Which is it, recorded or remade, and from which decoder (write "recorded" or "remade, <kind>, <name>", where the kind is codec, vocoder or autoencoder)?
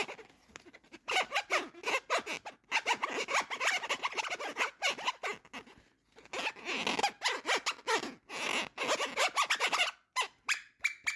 recorded